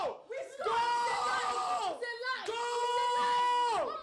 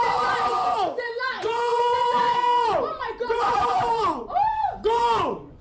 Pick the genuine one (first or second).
first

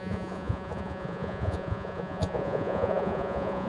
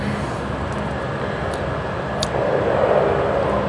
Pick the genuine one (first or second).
second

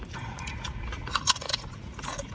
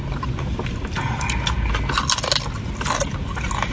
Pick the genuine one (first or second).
second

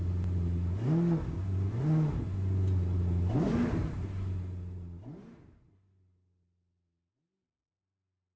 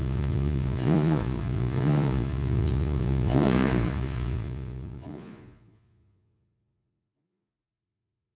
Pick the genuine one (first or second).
first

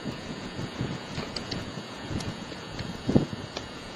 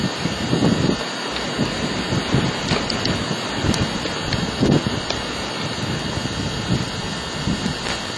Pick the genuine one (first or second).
second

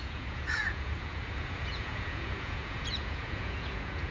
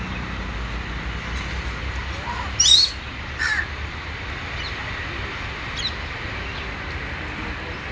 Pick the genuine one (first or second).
second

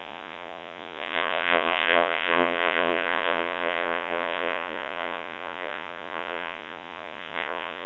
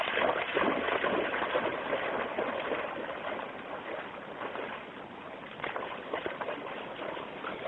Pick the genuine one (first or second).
second